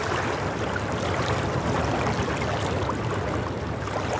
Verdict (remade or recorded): recorded